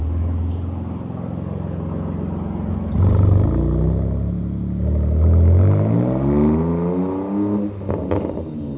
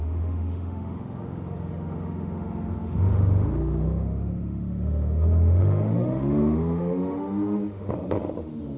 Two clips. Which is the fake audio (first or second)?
second